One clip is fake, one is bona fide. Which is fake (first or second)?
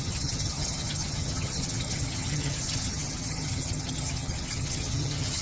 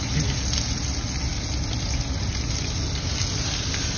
first